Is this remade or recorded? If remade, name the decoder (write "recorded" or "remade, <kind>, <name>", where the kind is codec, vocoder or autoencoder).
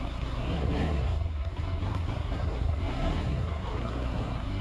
remade, codec, SNAC